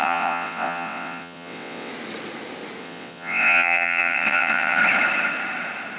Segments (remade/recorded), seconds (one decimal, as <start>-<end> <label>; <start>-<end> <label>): 0.0-1.9 remade; 1.9-2.8 recorded; 2.8-4.8 remade; 4.8-6.0 recorded